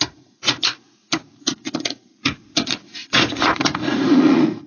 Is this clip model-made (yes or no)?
yes